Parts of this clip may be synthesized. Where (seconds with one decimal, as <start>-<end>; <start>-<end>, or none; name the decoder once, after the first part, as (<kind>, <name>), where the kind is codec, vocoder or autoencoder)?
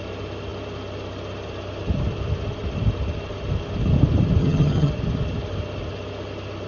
4.4-4.9 (vocoder, HiFi-GAN)